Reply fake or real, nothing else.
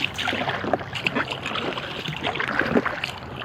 real